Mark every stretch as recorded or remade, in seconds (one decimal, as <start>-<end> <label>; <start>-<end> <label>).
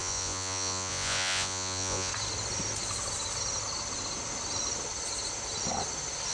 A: 0.0-2.1 remade; 2.1-6.3 recorded